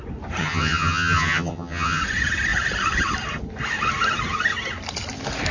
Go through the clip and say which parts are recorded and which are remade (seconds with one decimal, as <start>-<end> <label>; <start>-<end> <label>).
0.0-0.4 recorded; 0.4-2.0 remade; 2.0-5.5 recorded